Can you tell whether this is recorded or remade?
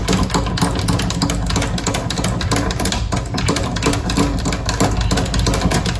recorded